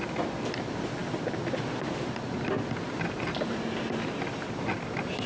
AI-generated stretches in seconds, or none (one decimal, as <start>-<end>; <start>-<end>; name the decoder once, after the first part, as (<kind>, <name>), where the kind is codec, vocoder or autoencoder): none